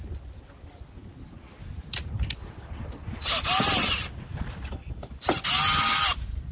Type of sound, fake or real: real